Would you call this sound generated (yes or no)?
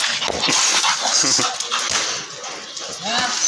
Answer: no